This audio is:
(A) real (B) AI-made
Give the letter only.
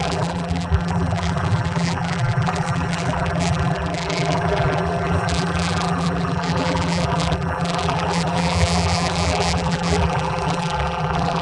B